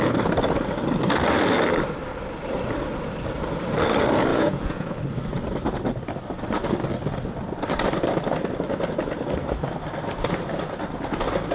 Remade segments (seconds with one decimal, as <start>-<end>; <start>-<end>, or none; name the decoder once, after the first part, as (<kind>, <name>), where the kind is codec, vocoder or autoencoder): 4.3-5.0 (vocoder, Vocos)